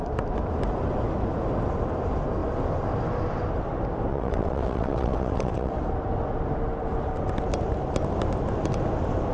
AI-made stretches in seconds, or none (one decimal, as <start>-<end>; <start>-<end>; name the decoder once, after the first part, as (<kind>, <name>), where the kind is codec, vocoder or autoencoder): 4.1-5.7 (vocoder, WaveNeXt)